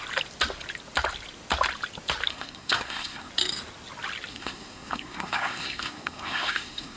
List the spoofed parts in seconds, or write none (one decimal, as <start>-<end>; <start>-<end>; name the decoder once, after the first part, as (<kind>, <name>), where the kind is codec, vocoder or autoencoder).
2.3-3.3 (codec, SNAC); 4.3-7.0